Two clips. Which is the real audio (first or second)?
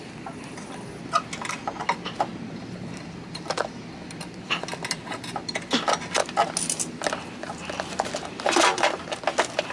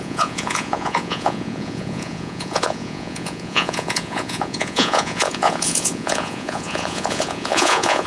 first